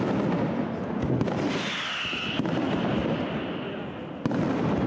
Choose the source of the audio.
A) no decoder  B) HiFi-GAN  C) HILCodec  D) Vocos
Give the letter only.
A